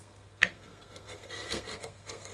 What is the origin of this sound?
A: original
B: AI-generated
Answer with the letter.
B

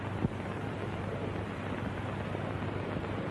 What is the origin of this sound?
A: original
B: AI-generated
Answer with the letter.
A